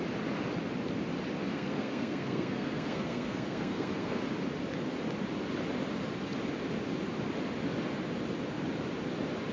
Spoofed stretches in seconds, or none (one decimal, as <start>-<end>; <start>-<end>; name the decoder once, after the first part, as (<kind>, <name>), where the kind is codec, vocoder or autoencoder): 1.5-4.2 (codec, SNAC)